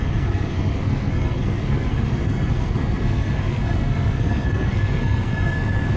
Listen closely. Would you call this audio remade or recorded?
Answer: remade